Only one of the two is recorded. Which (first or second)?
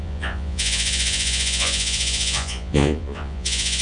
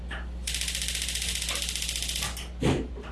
second